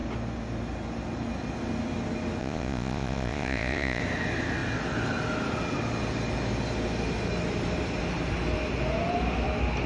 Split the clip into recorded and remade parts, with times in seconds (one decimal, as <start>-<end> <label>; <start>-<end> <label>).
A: 0.0-2.4 recorded; 2.4-4.0 remade; 4.0-9.9 recorded